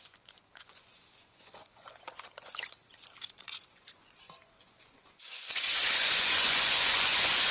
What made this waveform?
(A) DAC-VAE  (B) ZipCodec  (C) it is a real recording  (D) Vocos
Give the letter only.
D